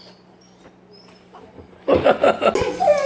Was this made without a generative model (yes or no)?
yes